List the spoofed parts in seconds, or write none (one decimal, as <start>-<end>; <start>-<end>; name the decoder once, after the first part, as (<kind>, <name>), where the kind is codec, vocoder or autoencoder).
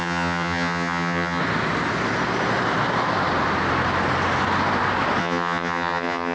0.0-1.4 (vocoder, HiFi-GAN); 5.2-6.3